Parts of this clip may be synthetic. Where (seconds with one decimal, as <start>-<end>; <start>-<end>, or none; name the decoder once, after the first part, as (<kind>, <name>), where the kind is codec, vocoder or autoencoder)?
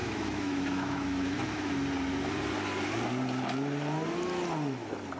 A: 0.0-1.7 (autoencoder, DAC-VAE)